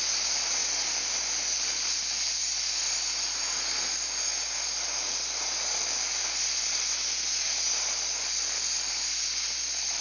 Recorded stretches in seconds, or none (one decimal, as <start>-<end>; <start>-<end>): 0.0-10.0